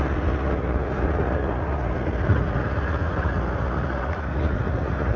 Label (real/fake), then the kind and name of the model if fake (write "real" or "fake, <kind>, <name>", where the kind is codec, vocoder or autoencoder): fake, vocoder, Vocos